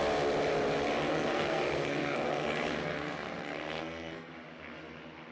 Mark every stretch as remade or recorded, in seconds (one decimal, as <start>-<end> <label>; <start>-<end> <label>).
0.0-1.1 recorded; 1.1-4.3 remade; 4.3-5.3 recorded